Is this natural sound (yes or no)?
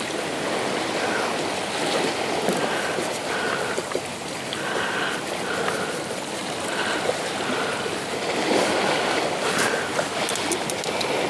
yes